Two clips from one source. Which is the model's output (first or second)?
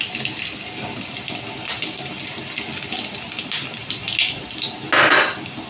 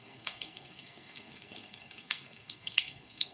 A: second